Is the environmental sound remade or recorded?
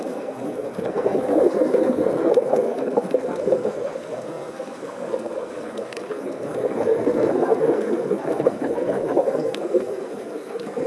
remade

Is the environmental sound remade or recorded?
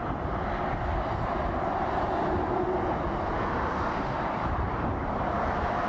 recorded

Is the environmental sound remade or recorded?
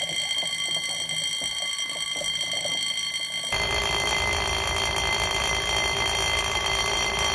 recorded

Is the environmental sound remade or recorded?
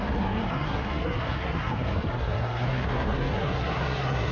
remade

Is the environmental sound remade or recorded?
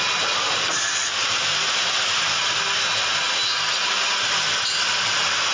recorded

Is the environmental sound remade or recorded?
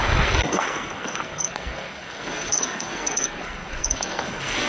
remade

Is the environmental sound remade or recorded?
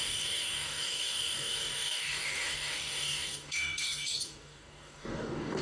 remade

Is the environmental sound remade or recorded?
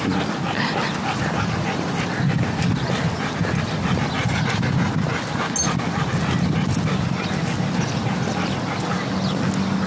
recorded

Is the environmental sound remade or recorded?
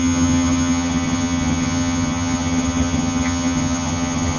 remade